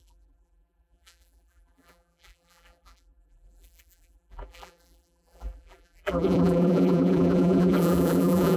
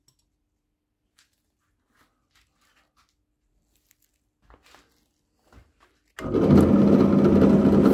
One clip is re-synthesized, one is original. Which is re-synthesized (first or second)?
first